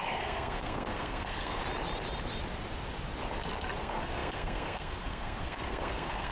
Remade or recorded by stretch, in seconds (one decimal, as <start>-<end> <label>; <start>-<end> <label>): 0.0-1.6 remade; 1.6-3.8 recorded; 3.8-6.3 remade